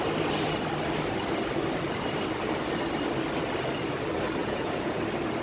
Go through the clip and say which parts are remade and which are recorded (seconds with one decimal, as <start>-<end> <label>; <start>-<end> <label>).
0.0-4.4 recorded; 4.4-5.0 remade; 5.0-5.4 recorded

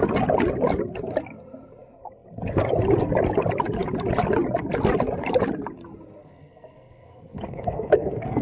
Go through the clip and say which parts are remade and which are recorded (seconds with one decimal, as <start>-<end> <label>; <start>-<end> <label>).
0.0-6.2 recorded; 6.2-8.4 remade

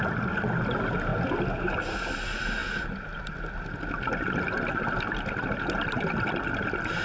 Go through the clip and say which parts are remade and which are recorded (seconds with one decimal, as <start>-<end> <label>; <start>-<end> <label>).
0.0-7.0 recorded

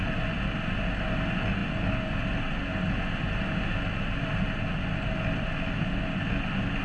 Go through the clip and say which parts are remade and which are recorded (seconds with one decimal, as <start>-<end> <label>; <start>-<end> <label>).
0.0-6.8 recorded

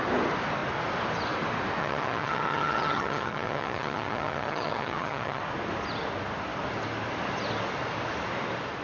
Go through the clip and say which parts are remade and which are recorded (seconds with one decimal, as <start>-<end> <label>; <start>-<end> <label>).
0.0-1.8 recorded; 1.8-5.4 remade; 5.4-8.8 recorded